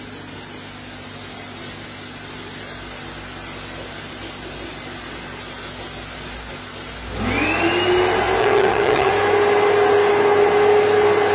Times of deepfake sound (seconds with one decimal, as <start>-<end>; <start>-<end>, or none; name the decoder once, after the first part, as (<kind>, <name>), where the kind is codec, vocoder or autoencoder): 8.4-9.1 (vocoder, HiFi-GAN)